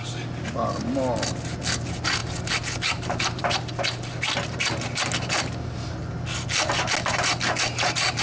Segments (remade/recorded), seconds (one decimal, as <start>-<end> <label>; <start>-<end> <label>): 0.0-8.2 recorded